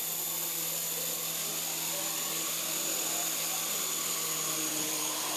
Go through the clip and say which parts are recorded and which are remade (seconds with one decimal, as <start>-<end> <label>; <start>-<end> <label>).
0.0-4.7 recorded; 4.7-5.4 remade